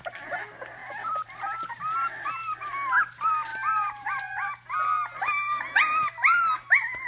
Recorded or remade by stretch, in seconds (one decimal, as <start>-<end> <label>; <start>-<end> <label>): 0.0-0.8 recorded; 0.8-1.7 remade; 1.7-3.5 recorded; 3.5-4.5 remade; 4.5-7.1 recorded